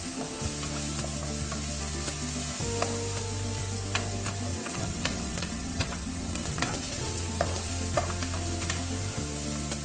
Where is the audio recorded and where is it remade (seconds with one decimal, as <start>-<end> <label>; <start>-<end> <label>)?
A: 0.0-4.5 recorded; 4.5-7.7 remade; 7.7-9.8 recorded